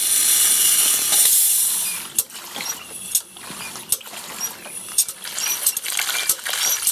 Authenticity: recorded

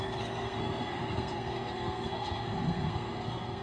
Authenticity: remade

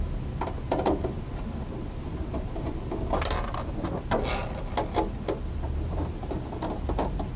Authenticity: recorded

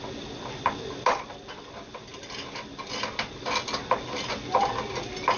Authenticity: recorded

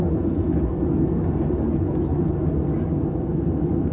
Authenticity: recorded